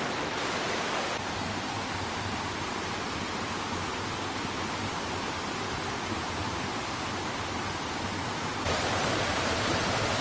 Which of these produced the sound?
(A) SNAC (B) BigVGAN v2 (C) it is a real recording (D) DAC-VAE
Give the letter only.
C